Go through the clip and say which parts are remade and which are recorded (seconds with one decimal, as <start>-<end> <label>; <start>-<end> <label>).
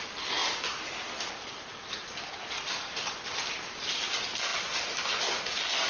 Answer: 0.0-0.4 recorded; 0.4-3.9 remade; 3.9-5.9 recorded